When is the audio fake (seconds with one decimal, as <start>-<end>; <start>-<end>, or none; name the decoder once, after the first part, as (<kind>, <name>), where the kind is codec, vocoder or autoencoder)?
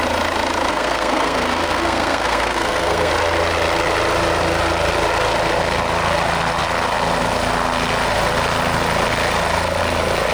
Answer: 0.7-3.1 (codec, SNAC)